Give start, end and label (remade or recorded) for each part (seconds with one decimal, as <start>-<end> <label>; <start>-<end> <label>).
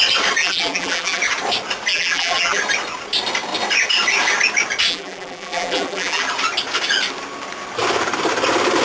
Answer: 0.0-0.4 recorded; 0.4-1.2 remade; 1.2-1.9 recorded; 1.9-2.6 remade; 2.6-4.9 recorded; 4.9-6.2 remade; 6.2-8.8 recorded